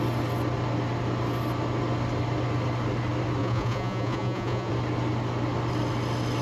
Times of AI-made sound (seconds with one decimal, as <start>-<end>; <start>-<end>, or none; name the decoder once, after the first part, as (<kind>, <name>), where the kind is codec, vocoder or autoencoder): 3.4-4.7 (vocoder, Vocos)

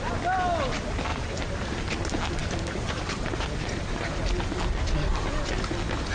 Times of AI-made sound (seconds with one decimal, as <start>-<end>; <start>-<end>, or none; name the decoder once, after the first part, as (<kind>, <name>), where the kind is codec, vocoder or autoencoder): 1.1-1.8 (vocoder, BigVGAN v2); 2.4-4.2